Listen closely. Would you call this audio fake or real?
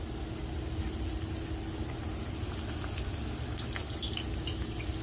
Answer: real